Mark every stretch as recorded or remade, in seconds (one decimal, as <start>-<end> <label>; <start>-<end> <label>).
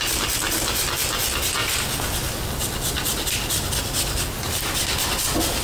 0.0-5.6 recorded